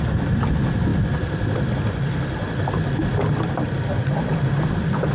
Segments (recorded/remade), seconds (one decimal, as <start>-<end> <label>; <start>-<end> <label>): 0.0-5.1 recorded

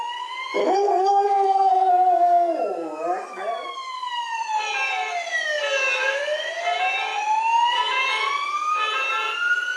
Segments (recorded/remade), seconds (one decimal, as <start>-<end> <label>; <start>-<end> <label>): 0.0-0.6 recorded; 0.6-1.9 remade; 1.9-9.8 recorded

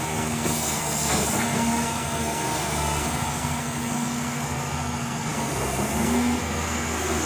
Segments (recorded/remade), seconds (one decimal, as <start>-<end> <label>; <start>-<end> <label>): 0.0-7.3 remade

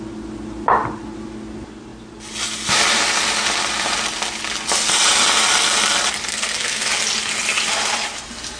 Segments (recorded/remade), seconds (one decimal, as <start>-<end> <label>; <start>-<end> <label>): 0.0-6.3 recorded; 6.3-6.9 remade; 6.9-8.6 recorded

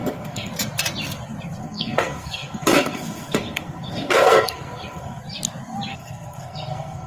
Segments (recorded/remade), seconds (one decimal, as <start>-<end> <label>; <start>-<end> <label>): 0.0-0.5 remade; 0.5-1.6 recorded; 1.6-5.2 remade; 5.2-5.9 recorded; 5.9-7.1 remade